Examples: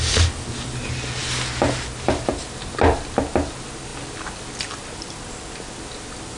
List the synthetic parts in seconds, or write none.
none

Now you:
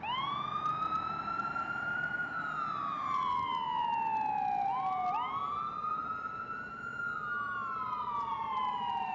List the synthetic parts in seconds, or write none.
1.6-3.5 (vocoder, BigVGAN v2); 5.4-6.8

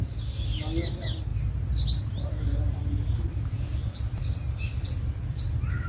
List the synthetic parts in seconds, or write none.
none